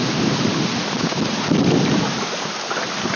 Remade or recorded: recorded